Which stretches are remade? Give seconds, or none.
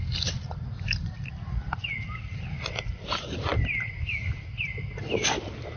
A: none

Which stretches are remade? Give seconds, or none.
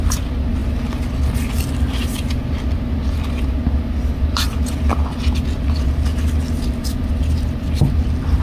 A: none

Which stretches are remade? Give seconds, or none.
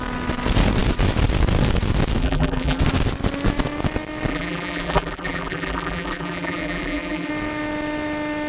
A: 2.2-2.8 (vocoder, BigVGAN v2); 4.3-7.3